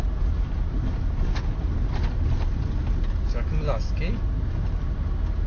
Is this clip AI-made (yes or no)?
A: no